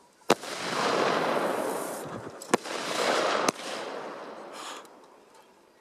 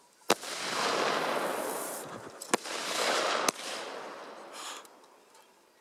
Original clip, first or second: second